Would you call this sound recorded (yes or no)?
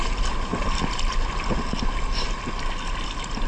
yes